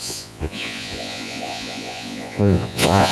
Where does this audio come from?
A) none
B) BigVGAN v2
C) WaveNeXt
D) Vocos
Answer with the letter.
D